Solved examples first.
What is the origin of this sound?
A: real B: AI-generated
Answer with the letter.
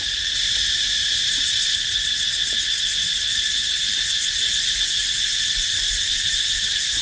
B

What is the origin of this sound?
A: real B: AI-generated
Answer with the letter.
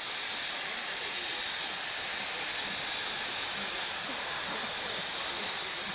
A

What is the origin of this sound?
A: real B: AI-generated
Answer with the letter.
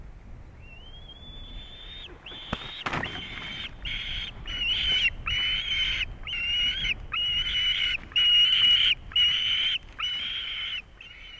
A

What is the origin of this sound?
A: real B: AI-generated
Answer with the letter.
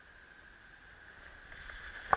A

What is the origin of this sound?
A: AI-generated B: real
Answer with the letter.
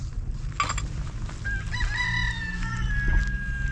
B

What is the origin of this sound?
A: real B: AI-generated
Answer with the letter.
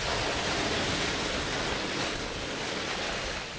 A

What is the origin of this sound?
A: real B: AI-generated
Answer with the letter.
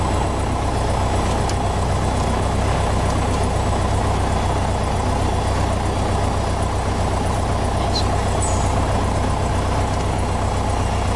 A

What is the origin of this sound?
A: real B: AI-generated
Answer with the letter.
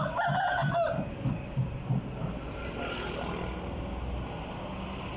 A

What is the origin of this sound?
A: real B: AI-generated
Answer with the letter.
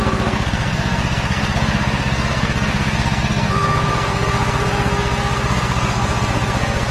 B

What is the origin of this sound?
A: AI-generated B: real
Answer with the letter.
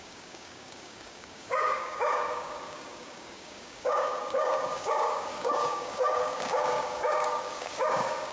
A